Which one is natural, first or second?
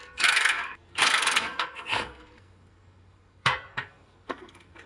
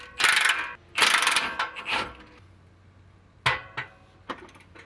second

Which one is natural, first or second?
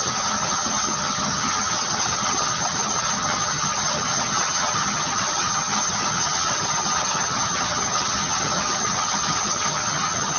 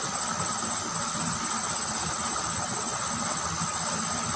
second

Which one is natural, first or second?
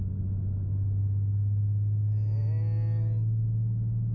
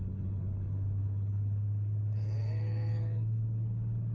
first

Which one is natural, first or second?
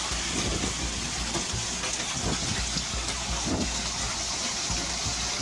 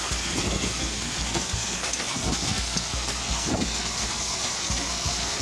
first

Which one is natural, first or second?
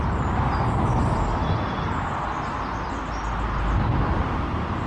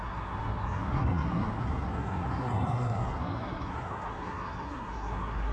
first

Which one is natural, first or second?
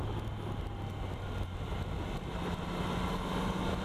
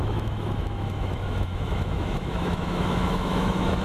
first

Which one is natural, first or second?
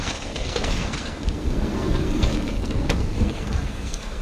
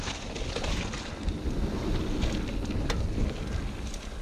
second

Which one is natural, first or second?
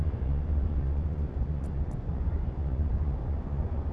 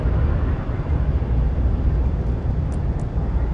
second